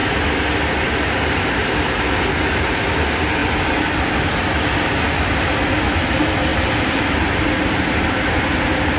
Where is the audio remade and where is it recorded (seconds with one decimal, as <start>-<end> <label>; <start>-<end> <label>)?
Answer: 0.0-6.5 recorded; 6.5-8.0 remade; 8.0-9.0 recorded